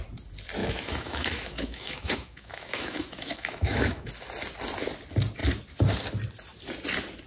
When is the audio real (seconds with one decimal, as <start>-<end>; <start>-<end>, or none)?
0.0-0.6; 4.1-7.3